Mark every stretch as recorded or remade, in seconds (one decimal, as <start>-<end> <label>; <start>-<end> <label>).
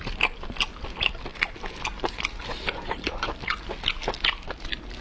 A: 0.0-1.3 recorded; 1.3-3.3 remade; 3.3-5.0 recorded